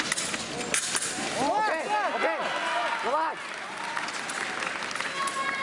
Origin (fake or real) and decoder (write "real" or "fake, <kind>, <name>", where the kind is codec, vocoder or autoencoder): real